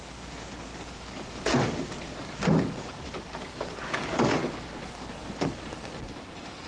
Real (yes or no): no